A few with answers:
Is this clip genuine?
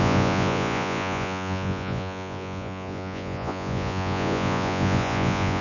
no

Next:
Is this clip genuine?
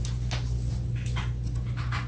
yes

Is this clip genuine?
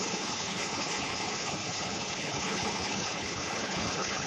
no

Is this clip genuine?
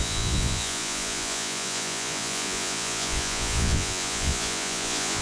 no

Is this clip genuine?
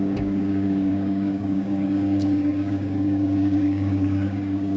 no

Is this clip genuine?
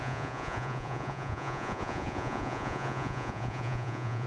no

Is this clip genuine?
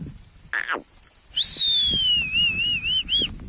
yes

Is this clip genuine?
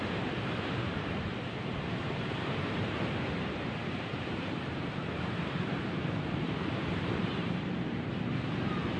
no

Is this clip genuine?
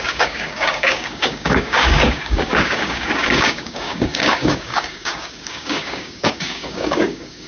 no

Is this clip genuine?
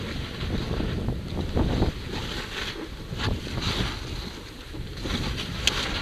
yes